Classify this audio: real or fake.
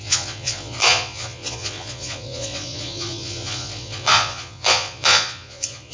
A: fake